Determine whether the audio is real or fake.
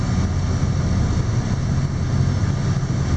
real